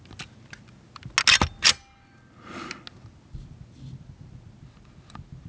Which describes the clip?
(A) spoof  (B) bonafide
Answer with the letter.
B